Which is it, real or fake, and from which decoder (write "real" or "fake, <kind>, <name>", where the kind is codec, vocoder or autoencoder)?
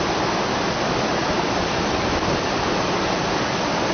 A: real